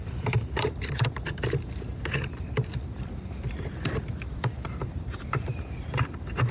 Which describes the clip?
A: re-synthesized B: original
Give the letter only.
A